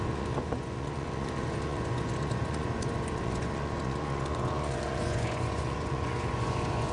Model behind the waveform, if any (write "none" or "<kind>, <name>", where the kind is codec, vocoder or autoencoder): vocoder, Vocos